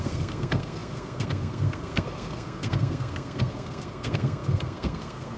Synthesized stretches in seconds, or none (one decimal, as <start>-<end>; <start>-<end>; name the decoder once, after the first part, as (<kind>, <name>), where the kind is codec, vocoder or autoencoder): 0.0-5.4 (codec, SNAC)